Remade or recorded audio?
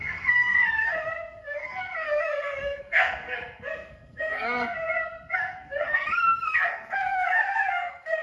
remade